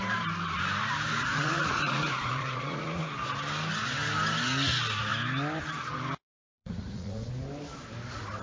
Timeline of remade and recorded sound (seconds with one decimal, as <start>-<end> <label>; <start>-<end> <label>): 0.0-1.3 recorded; 1.3-3.0 remade; 3.0-6.2 recorded; 6.2-7.3 remade; 7.3-8.4 recorded